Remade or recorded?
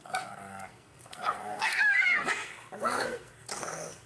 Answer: remade